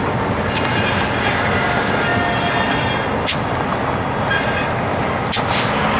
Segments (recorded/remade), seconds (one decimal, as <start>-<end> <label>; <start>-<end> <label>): 0.0-6.0 recorded